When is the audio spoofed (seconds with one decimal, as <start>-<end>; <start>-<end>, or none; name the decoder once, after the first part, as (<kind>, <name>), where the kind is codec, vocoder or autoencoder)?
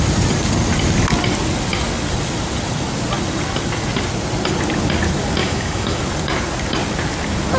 5.4-6.0 (autoencoder, DAC-VAE)